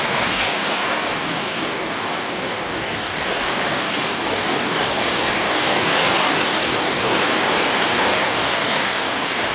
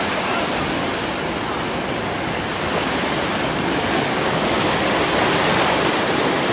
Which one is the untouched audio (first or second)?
second